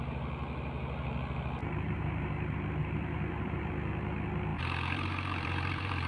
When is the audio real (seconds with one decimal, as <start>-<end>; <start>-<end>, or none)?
0.0-1.6; 2.3-2.8; 3.7-4.5